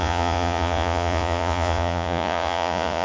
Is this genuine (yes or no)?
no